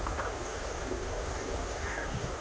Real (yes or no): no